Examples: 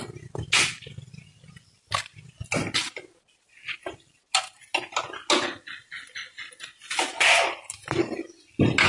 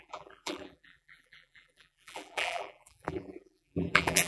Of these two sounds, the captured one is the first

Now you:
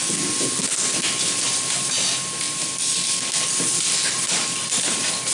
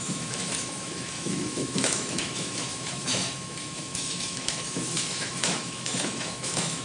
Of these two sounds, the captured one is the first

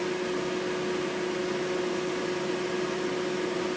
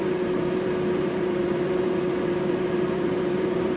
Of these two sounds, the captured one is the first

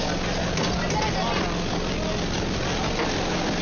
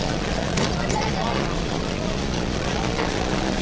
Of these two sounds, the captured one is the first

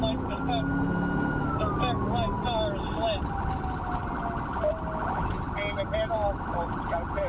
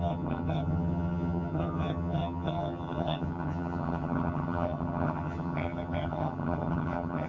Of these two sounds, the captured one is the first